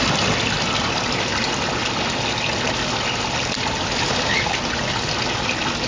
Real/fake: real